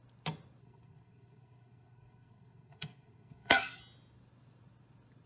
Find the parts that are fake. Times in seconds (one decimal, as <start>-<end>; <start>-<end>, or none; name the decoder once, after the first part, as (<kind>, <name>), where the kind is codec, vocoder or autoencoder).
0.6-3.8 (codec, SNAC)